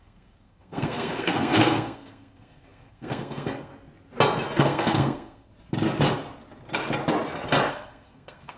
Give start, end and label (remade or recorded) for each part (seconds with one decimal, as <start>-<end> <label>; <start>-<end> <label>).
0.0-3.7 remade; 3.7-4.6 recorded; 4.6-5.5 remade; 5.5-7.7 recorded; 7.7-8.6 remade